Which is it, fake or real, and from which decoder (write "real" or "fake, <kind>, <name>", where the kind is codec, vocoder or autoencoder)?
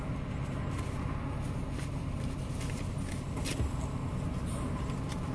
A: real